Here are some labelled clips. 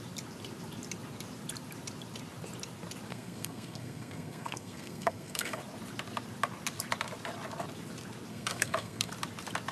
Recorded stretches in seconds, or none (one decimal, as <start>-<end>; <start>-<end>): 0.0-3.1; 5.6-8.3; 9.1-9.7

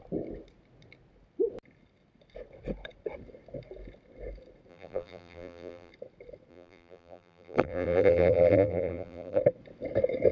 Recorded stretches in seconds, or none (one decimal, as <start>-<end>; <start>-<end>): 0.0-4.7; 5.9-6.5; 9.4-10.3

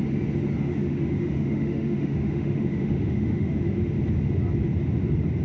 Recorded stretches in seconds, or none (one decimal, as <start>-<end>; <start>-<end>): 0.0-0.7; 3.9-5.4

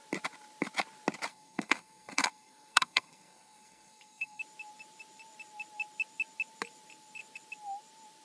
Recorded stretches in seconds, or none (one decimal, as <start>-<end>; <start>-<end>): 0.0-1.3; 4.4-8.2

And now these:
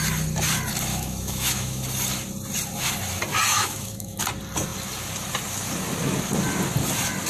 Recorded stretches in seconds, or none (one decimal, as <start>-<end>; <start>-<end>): 0.0-0.9; 1.8-3.5; 4.2-7.3

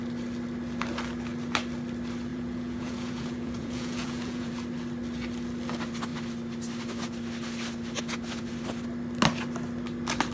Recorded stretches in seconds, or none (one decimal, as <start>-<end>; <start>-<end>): 0.0-2.3; 4.5-10.3